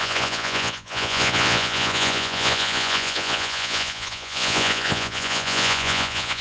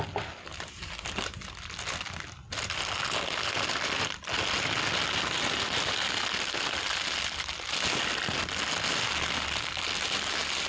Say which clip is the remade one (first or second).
first